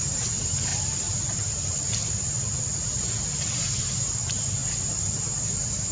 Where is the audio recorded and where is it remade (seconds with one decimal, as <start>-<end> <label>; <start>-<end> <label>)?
0.0-0.7 remade; 0.7-3.8 recorded; 3.8-4.6 remade; 4.6-5.4 recorded; 5.4-5.9 remade